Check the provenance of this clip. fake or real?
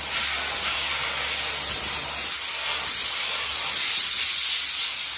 real